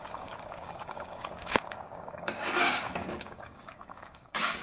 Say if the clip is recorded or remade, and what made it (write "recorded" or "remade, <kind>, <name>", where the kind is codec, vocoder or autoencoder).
remade, codec, DAC